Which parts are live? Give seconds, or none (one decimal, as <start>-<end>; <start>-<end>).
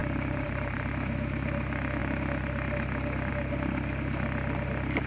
0.9-5.1